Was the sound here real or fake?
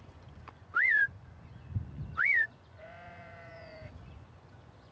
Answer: fake